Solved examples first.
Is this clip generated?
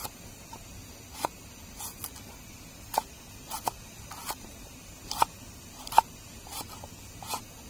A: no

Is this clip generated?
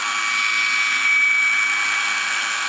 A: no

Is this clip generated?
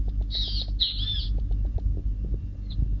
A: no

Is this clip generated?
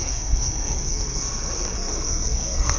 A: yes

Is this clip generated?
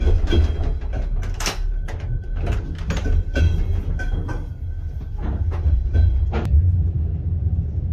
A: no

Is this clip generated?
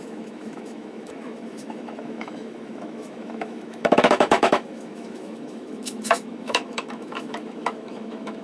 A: yes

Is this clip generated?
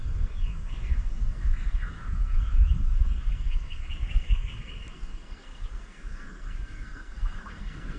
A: yes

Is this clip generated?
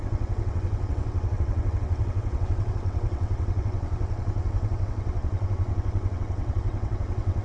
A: yes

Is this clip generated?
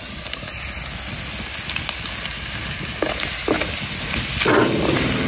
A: no